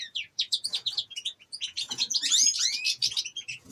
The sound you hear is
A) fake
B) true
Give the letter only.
A